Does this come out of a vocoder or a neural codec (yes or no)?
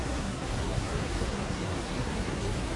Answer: yes